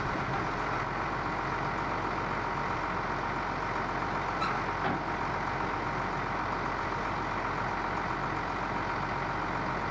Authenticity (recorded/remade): recorded